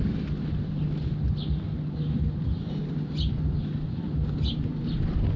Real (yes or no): yes